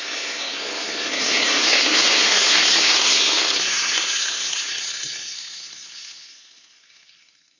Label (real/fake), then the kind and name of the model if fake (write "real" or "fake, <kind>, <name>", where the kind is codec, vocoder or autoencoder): fake, codec, SNAC